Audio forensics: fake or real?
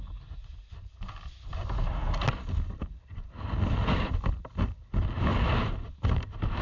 real